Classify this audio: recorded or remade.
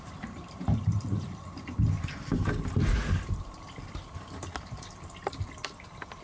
recorded